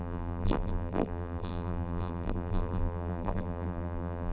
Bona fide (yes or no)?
no